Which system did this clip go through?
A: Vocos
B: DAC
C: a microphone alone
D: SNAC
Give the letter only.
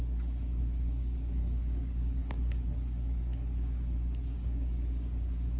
B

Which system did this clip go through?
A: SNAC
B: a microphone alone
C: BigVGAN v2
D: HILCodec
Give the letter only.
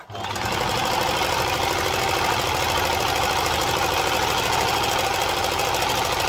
B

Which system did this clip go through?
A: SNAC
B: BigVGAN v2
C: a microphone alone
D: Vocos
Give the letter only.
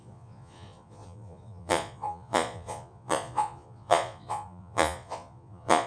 D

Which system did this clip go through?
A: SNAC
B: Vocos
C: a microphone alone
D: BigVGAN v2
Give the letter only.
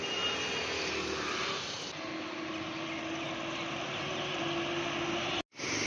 C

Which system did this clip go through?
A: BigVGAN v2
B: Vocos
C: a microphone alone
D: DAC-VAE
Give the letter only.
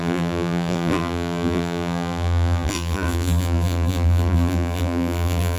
A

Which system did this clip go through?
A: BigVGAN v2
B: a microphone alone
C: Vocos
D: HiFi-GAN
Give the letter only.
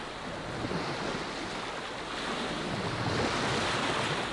B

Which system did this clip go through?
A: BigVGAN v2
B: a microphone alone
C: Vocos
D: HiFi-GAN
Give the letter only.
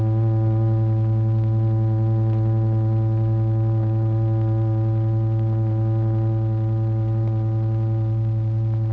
B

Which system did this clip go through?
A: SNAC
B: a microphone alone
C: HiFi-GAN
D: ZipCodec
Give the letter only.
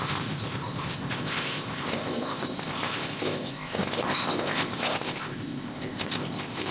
D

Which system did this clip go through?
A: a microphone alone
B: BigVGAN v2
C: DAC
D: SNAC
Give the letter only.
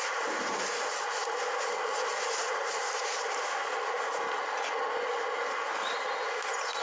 A